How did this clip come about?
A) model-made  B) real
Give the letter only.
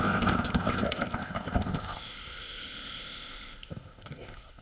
A